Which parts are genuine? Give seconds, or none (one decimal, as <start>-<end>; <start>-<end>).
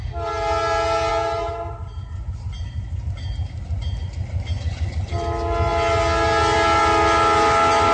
0.0-7.9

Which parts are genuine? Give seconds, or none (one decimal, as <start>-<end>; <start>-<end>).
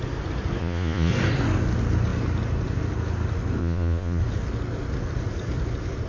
0.0-0.6; 1.1-3.6; 4.2-6.1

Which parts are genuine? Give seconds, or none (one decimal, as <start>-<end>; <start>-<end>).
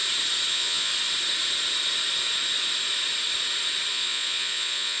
0.0-0.5; 0.9-3.9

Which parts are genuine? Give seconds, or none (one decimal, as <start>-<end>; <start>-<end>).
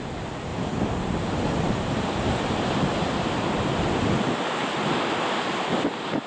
0.0-0.5; 2.5-6.3